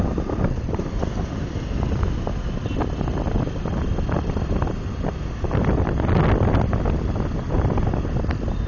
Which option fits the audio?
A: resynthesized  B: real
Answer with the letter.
B